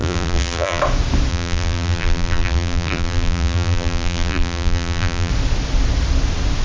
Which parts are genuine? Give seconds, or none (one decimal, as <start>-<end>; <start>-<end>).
0.8-1.3; 5.3-6.6